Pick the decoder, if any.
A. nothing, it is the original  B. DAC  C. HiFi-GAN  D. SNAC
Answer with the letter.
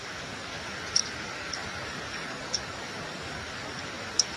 B